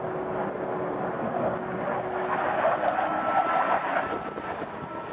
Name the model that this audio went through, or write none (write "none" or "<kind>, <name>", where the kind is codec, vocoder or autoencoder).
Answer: none